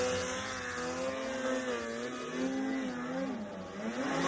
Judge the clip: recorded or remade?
recorded